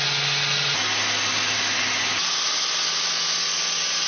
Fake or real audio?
real